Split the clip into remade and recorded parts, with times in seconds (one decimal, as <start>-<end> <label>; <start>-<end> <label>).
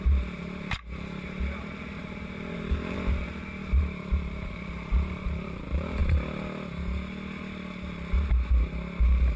0.0-6.0 remade; 6.0-9.0 recorded; 9.0-9.4 remade